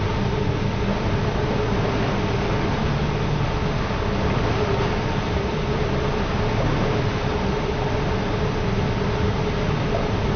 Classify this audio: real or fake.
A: real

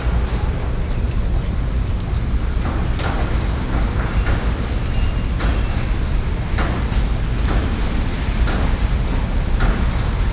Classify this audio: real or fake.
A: real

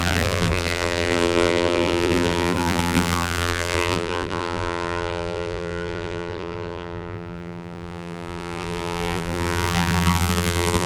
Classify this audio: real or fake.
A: fake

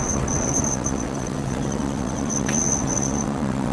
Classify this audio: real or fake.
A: fake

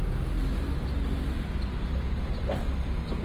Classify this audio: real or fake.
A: real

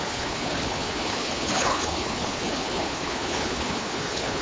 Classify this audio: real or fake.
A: fake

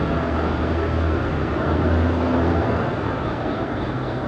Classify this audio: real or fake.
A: fake